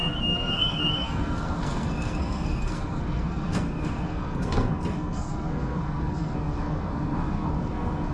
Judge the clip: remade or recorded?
remade